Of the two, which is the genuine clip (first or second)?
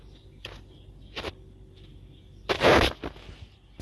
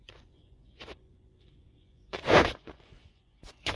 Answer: first